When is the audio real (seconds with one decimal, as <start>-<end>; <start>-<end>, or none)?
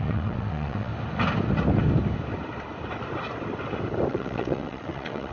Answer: 0.9-4.1